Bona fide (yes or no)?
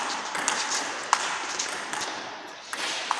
yes